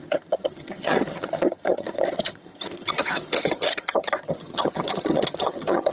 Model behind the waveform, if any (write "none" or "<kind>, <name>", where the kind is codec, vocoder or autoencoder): vocoder, HiFi-GAN